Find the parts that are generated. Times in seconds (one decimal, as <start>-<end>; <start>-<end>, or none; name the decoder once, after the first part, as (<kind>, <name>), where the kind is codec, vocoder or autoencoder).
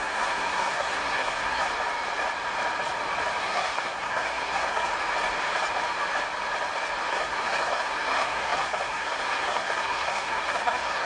0.0-1.7 (codec, SNAC); 3.4-4.9; 7.1-11.1